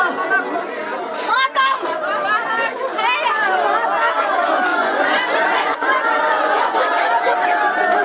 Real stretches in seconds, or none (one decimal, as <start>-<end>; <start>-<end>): 0.0-4.7; 7.0-8.0